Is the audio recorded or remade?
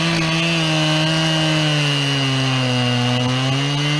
recorded